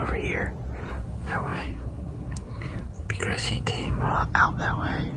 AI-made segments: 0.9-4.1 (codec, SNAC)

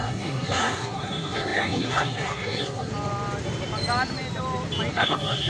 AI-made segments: 0.0-2.9 (codec, SNAC); 4.9-5.5

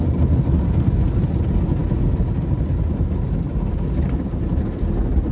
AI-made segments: none